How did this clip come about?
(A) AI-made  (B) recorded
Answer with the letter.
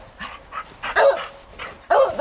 B